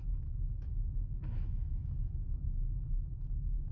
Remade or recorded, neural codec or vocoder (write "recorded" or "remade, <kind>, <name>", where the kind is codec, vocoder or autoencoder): remade, autoencoder, DAC-VAE